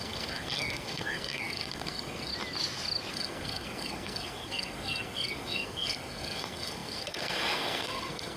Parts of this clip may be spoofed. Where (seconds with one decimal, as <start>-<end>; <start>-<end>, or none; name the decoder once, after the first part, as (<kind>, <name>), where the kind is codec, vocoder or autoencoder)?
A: 0.0-2.3 (codec, SNAC); 3.1-8.4